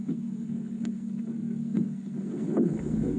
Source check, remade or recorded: remade